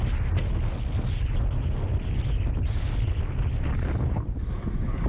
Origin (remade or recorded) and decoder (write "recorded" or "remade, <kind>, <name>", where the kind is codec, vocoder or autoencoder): recorded